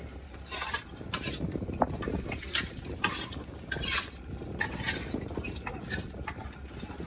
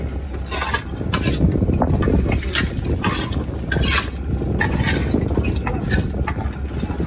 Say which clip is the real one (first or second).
second